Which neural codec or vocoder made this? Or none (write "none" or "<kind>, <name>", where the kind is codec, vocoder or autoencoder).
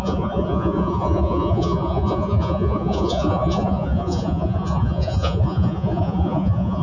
vocoder, Vocos